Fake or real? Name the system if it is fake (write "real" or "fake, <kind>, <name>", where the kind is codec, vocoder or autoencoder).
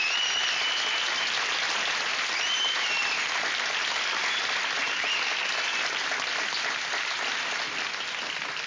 real